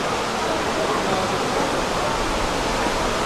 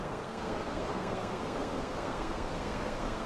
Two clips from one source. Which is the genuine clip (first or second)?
first